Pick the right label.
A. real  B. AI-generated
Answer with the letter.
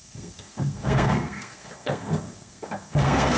B